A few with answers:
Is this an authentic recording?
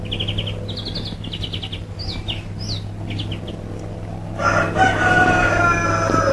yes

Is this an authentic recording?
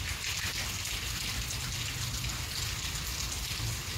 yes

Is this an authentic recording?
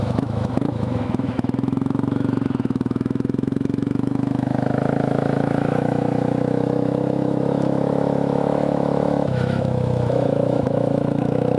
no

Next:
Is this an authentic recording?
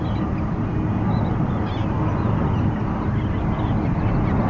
yes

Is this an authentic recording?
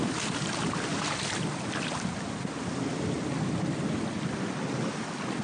yes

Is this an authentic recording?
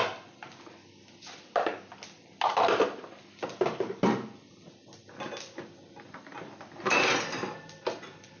yes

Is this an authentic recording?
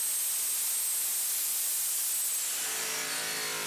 yes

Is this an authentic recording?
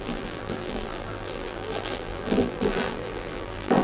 no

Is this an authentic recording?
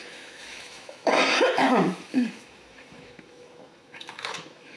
no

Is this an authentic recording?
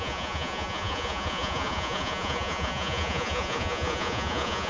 no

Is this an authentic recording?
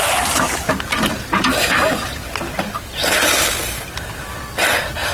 yes